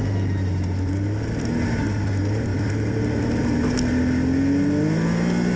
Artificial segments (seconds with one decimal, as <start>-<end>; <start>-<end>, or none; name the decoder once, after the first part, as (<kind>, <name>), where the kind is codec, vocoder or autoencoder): none